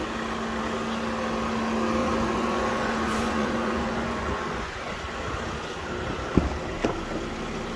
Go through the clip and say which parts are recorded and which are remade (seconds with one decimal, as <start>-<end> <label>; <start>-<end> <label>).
0.0-2.0 recorded; 2.0-5.0 remade; 5.0-7.8 recorded